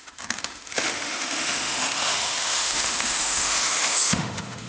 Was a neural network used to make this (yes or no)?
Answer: yes